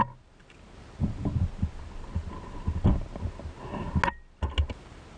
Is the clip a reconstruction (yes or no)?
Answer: no